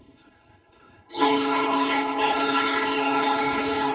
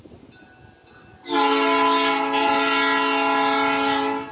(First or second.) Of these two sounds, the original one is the second